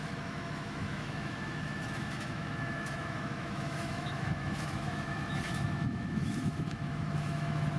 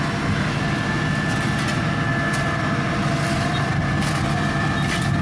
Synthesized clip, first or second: first